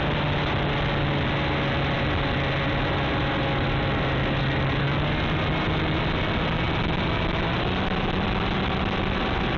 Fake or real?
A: real